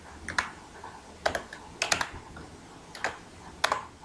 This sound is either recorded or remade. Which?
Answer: recorded